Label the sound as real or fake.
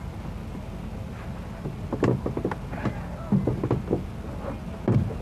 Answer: real